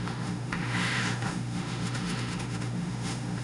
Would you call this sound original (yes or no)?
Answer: no